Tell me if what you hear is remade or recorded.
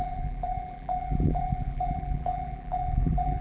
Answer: remade